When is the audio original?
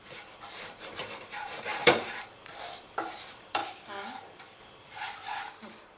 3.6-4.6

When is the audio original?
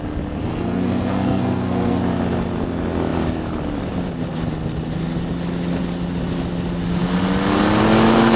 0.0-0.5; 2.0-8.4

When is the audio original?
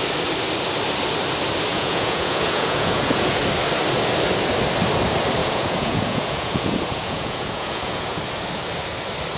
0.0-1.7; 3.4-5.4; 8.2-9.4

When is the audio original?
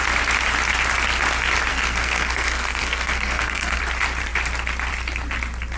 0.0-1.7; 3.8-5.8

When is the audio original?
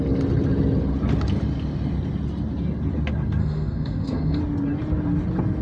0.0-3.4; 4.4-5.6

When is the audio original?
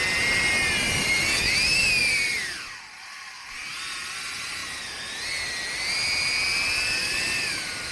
0.0-2.0; 2.9-7.9